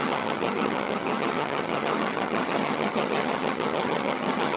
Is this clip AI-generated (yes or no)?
yes